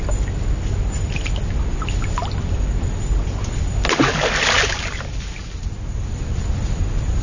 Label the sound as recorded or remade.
recorded